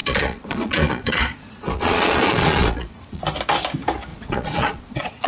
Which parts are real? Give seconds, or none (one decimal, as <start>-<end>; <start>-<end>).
3.2-4.1